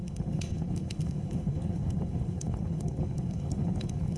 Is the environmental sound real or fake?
fake